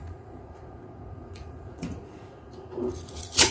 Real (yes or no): no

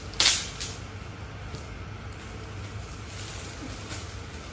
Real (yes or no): yes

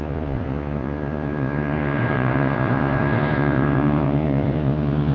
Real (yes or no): no